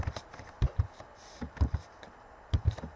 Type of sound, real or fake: fake